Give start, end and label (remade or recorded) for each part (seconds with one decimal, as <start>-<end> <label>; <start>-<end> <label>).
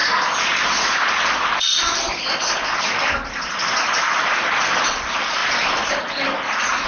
0.0-6.9 recorded